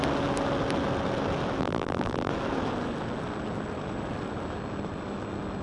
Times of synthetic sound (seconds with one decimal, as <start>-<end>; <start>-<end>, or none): 1.6-2.3